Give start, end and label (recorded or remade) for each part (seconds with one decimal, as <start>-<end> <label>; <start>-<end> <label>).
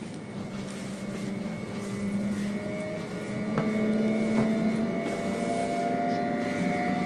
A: 0.0-7.1 recorded